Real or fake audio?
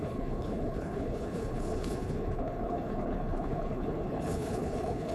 fake